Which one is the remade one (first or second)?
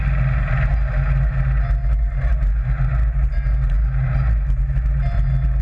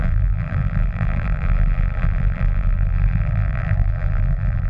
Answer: second